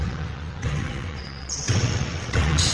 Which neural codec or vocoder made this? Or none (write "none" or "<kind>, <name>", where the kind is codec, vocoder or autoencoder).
vocoder, WaveNeXt